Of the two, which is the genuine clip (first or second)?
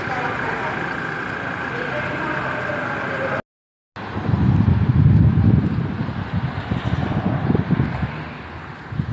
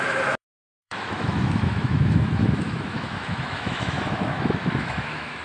first